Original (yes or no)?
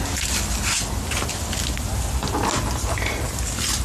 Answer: yes